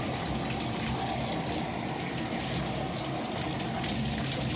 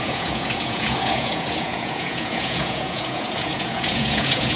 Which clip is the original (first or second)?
first